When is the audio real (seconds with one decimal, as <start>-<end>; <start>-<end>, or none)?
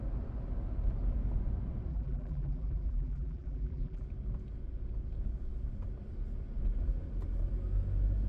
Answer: 0.0-1.9; 4.0-8.3